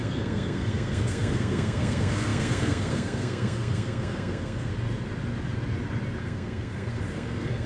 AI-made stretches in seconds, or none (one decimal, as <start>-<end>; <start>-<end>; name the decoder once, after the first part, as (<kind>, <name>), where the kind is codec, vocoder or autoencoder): 0.0-4.7 (codec, SNAC); 6.2-7.7